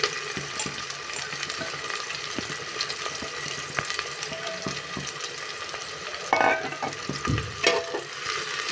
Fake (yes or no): no